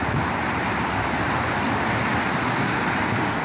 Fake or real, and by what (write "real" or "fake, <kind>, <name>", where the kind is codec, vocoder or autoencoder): real